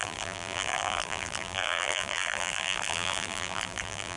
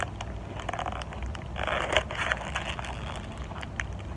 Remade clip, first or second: first